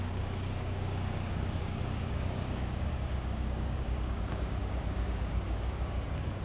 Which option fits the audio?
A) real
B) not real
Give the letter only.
B